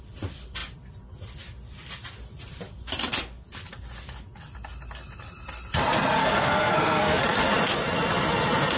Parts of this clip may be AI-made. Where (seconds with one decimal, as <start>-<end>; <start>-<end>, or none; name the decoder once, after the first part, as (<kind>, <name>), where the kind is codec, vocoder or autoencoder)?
6.2-7.2 (codec, SNAC)